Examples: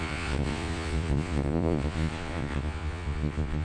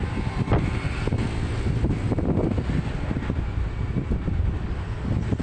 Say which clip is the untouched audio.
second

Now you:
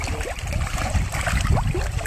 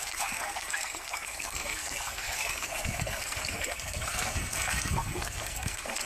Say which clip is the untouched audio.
first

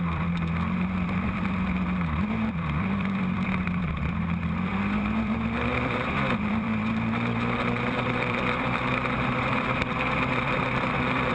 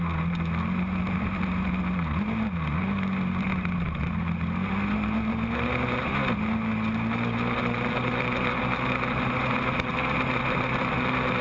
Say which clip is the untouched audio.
second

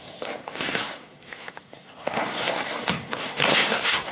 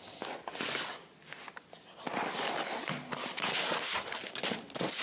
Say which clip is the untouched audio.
second